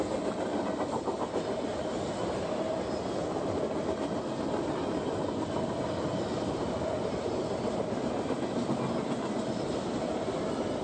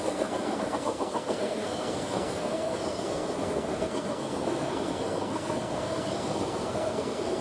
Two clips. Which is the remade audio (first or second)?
second